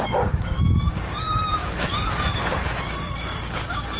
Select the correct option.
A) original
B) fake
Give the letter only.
B